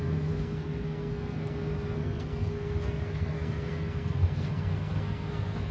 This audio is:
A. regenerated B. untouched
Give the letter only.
A